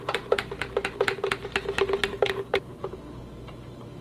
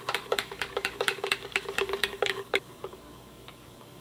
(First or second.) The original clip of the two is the first